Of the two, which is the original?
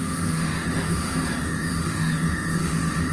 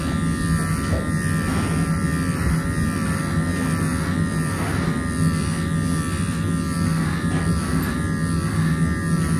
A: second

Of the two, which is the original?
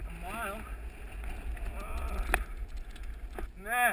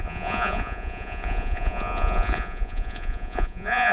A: first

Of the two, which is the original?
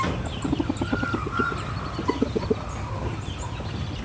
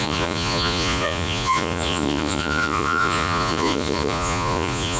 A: first